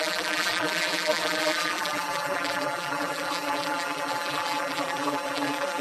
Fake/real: fake